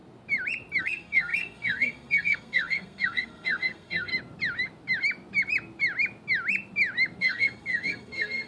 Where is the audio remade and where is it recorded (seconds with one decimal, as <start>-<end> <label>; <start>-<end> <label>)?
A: 0.0-0.8 recorded; 0.8-4.1 remade; 4.1-7.2 recorded; 7.2-8.5 remade